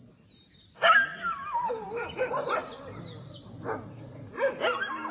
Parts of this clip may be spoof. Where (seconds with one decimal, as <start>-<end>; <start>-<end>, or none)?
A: none